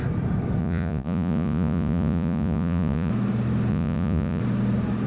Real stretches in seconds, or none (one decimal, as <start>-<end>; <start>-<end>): 0.0-0.6; 3.1-3.7; 4.4-5.1

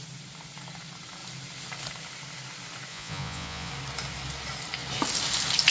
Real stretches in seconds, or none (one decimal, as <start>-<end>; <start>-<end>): 0.0-2.9; 3.7-5.7